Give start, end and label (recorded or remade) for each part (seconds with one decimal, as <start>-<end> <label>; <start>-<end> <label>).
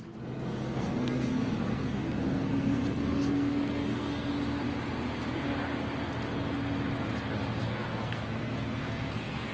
0.0-4.3 remade; 4.3-7.6 recorded; 7.6-9.5 remade